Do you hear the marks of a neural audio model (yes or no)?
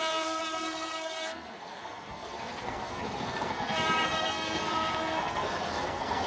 yes